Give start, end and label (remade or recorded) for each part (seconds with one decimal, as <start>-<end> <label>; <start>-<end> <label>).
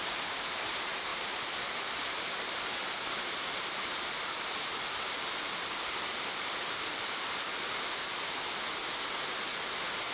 0.0-8.8 remade; 8.8-9.4 recorded; 9.4-10.1 remade